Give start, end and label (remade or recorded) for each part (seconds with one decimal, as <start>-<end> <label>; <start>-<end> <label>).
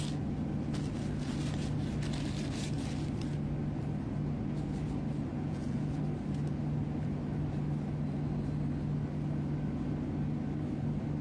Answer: 0.0-5.3 recorded; 5.3-6.0 remade; 6.0-11.2 recorded